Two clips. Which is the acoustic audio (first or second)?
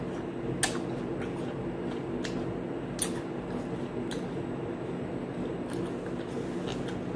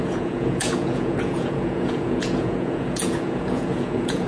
first